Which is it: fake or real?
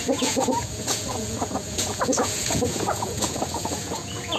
fake